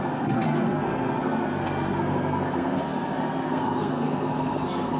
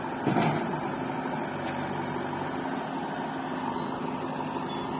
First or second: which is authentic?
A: second